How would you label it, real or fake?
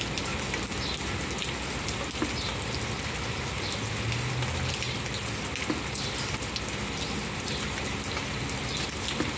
real